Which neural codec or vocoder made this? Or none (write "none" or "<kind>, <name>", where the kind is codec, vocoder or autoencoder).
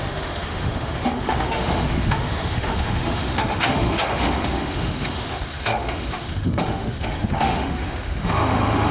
autoencoder, DAC-VAE